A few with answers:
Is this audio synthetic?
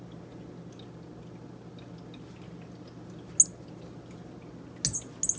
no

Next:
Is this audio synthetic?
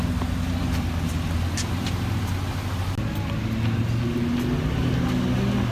no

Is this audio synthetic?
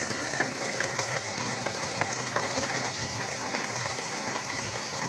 yes